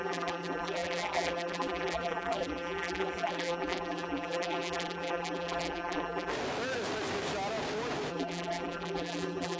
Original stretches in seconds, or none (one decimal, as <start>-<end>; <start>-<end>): 6.3-8.1